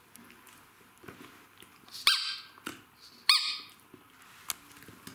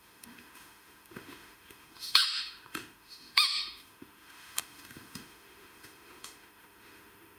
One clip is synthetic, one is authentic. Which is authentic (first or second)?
first